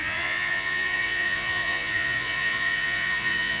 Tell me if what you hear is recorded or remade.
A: remade